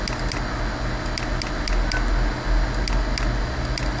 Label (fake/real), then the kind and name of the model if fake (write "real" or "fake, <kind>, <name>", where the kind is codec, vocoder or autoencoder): real